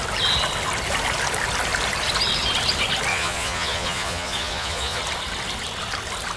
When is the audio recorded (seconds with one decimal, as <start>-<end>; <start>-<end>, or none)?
0.0-3.1; 5.0-6.4

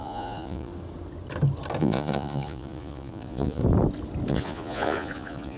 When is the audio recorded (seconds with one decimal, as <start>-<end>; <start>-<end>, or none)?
0.7-1.8; 3.6-4.3

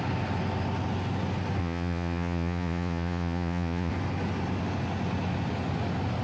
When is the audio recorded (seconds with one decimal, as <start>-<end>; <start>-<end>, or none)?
0.0-1.6; 3.9-6.2